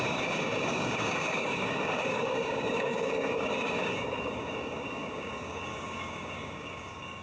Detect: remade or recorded remade